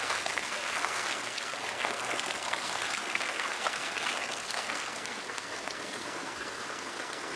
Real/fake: fake